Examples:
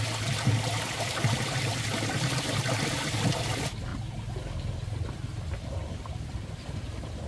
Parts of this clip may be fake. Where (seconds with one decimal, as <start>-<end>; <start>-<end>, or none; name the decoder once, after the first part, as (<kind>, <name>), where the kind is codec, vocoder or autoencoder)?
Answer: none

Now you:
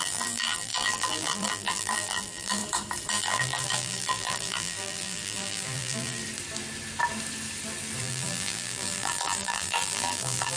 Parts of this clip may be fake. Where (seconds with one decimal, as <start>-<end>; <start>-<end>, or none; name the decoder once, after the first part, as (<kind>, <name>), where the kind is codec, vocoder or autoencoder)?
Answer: 0.0-2.6 (vocoder, BigVGAN v2); 3.1-6.2; 8.0-10.6

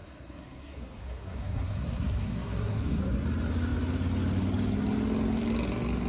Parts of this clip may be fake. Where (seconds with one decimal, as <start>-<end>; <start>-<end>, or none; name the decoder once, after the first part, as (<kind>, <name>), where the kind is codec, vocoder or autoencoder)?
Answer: 0.0-3.0 (codec, SNAC)